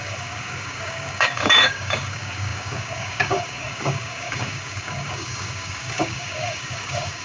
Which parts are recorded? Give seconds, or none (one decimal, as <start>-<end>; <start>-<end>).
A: none